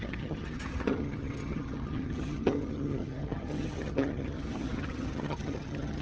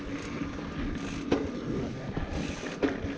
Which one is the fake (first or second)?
first